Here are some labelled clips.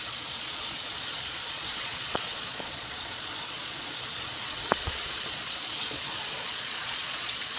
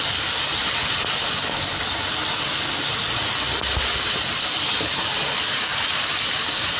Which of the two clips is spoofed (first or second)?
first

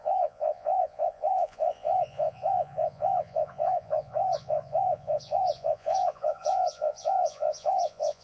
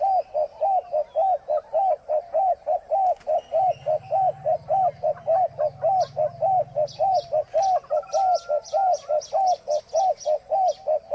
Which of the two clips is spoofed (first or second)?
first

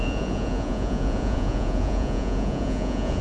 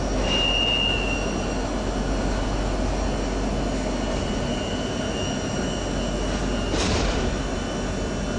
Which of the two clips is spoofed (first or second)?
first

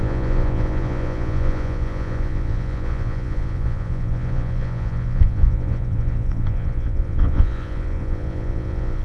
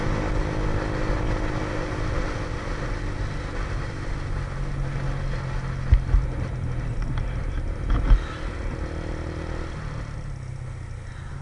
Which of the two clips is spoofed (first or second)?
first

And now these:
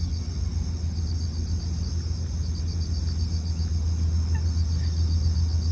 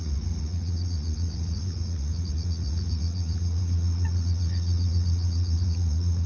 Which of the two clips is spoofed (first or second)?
second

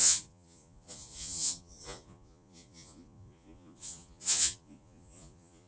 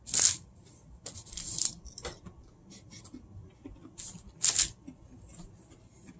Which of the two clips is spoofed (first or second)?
first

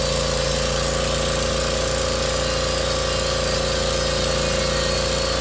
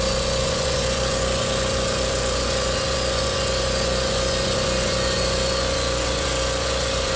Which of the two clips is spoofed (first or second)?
second